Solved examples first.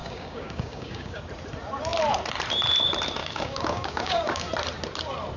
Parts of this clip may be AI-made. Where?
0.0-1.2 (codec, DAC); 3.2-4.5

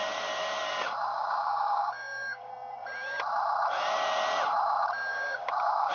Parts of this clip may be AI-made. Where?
1.1-2.5 (codec, DAC); 5.1-5.9

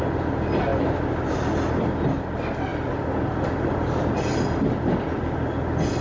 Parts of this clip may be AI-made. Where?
none

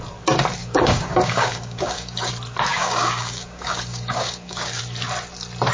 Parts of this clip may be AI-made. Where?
0.6-2.3 (codec, DAC); 2.7-4.8

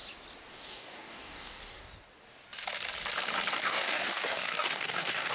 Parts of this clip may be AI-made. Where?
0.5-1.9 (codec, DAC); 3.6-5.3

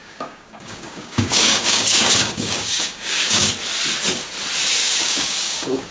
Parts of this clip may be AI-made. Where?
0.0-3.5 (codec, DAC); 4.8-5.9